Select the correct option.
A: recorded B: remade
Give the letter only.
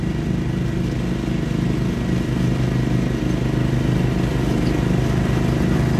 A